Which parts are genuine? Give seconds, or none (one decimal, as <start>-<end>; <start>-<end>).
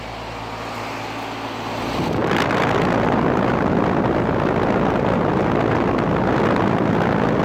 0.0-7.4